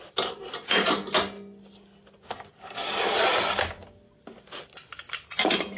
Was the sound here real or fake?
real